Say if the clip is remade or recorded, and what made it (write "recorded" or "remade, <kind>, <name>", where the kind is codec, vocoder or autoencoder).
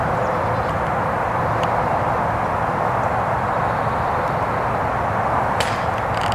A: recorded